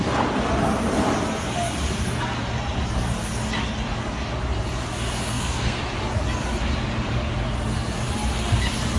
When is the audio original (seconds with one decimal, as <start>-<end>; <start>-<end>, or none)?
0.0-5.3; 5.8-9.0